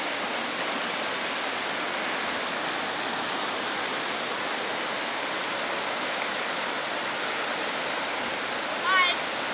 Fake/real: real